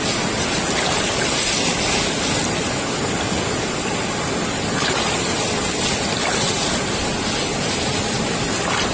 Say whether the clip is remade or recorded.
recorded